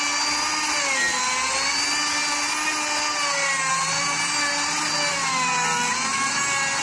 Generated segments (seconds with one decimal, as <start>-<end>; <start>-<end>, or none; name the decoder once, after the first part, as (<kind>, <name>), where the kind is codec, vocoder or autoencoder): none